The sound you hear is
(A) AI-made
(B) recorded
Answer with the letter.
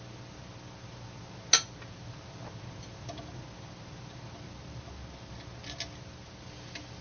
B